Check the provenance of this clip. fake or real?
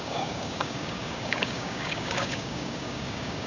fake